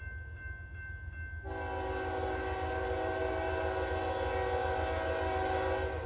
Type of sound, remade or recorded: recorded